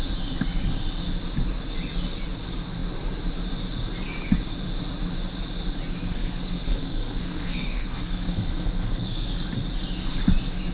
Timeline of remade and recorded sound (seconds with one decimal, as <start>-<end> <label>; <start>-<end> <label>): 0.0-6.1 recorded; 6.1-9.3 remade; 9.3-10.7 recorded